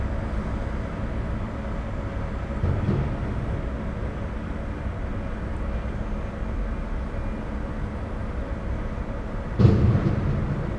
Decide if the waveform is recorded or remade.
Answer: recorded